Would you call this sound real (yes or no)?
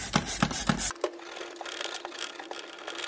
yes